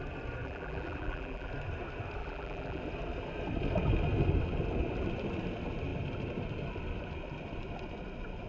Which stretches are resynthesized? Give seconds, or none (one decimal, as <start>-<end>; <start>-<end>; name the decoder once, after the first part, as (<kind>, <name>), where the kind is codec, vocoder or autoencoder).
0.4-1.5 (vocoder, BigVGAN v2); 2.2-2.8